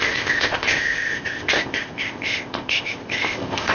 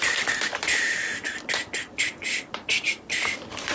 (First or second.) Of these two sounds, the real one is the second